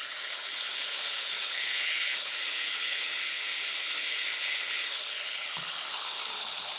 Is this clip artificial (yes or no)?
yes